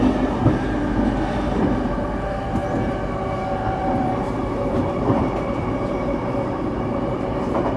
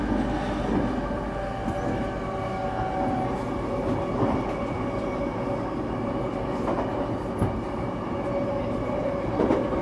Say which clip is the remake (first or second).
first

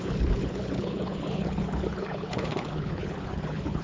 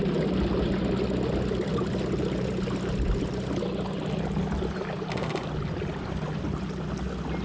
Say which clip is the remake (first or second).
first